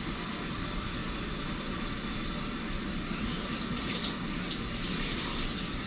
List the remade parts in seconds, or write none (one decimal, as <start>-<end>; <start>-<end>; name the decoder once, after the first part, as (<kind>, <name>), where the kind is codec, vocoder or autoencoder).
none